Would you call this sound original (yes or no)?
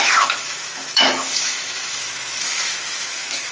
no